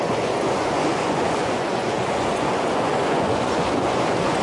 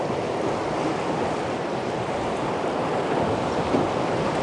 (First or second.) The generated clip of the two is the first